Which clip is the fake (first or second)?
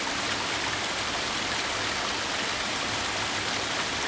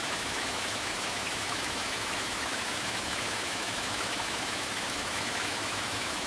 second